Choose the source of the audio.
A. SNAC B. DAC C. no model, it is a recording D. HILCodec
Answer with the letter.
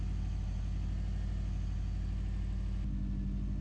C